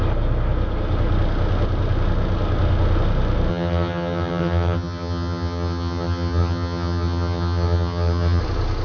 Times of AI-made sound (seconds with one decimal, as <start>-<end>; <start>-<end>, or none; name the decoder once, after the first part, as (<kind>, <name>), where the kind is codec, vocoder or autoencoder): 3.5-8.4 (vocoder, HiFi-GAN)